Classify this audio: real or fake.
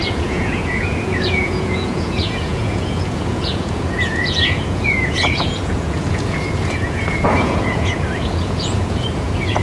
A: fake